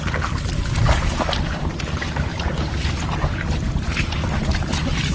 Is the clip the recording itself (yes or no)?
yes